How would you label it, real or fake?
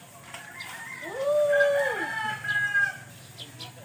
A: real